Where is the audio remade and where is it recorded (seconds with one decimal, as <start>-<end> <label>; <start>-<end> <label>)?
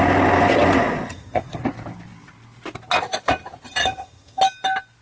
0.0-1.1 recorded; 1.1-1.6 remade; 1.6-3.8 recorded; 3.8-4.4 remade; 4.4-5.0 recorded